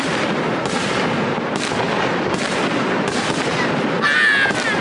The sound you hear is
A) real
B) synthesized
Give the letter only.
A